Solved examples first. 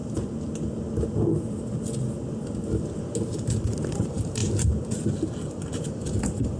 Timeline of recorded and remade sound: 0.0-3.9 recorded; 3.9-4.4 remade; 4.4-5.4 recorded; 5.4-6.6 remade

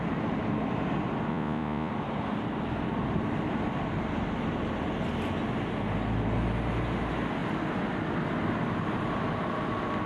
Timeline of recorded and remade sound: 0.0-1.3 recorded; 1.3-1.9 remade; 1.9-10.1 recorded

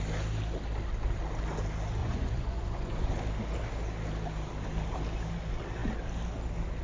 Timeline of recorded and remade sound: 0.0-2.0 recorded; 2.0-3.1 remade; 3.1-6.8 recorded

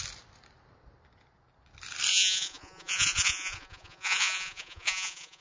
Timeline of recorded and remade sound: 0.0-2.1 recorded; 2.1-5.4 remade